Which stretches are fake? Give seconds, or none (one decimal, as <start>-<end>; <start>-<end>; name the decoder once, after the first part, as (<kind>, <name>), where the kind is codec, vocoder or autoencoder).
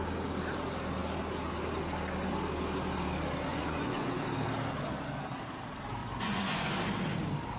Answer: 3.5-4.1 (vocoder, Vocos); 6.0-6.7